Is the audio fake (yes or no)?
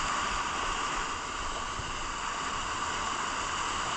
no